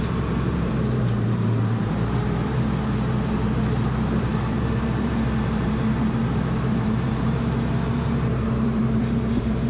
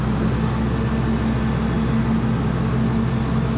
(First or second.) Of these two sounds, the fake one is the first